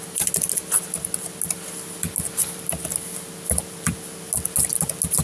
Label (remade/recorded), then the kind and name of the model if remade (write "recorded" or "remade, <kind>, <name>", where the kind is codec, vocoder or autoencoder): recorded